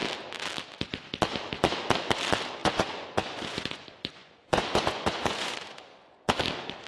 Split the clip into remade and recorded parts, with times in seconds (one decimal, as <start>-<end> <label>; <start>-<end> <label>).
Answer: 0.0-2.6 recorded; 2.6-6.4 remade; 6.4-6.9 recorded